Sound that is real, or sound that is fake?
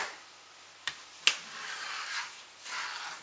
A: real